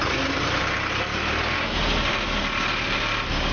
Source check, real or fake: real